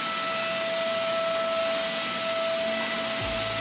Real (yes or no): yes